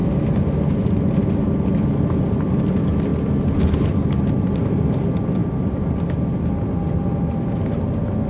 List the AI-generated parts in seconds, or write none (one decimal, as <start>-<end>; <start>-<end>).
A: none